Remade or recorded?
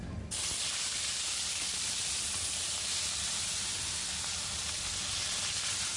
recorded